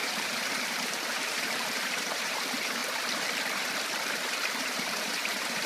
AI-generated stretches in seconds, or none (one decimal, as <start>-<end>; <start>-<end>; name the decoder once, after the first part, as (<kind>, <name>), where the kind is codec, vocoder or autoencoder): 0.0-2.8 (vocoder, BigVGAN v2); 4.1-5.7